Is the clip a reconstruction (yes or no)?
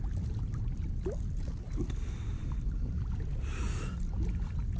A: no